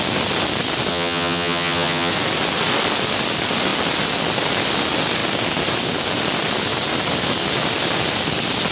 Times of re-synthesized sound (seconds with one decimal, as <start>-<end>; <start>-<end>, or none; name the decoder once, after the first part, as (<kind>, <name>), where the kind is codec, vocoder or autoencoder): 0.9-2.1 (vocoder, HiFi-GAN)